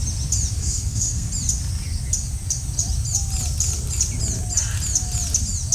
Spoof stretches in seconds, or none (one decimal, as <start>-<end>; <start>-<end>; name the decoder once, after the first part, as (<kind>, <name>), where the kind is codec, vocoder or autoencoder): 0.6-1.3 (codec, SNAC)